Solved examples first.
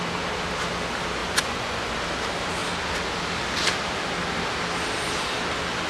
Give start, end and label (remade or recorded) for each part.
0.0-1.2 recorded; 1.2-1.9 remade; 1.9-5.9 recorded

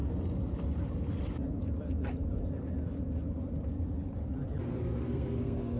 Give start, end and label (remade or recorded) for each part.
0.0-4.8 recorded; 4.8-5.8 remade

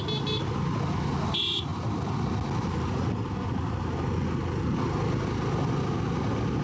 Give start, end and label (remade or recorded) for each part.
0.0-6.6 recorded

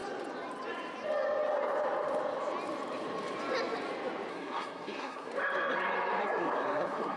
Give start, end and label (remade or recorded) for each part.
0.0-4.3 recorded; 4.3-5.3 remade; 5.3-6.2 recorded; 6.2-7.2 remade